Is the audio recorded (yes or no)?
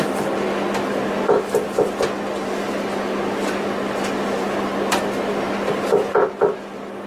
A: yes